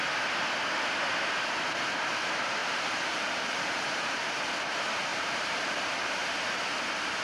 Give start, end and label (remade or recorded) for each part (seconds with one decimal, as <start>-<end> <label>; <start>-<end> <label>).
0.0-2.6 recorded; 2.6-4.5 remade; 4.5-5.1 recorded; 5.1-6.1 remade; 6.1-7.2 recorded